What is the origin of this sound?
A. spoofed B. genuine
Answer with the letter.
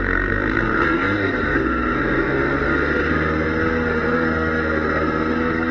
A